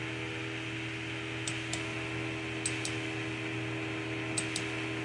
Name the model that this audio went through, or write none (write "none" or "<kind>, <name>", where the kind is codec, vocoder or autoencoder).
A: none